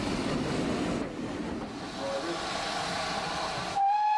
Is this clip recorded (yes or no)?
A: yes